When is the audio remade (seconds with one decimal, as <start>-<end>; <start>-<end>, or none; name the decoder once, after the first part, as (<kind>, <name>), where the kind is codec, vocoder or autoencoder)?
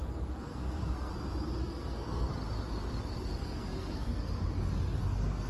0.0-1.1 (codec, SNAC); 1.6-2.3; 3.4-4.4; 5.0-5.5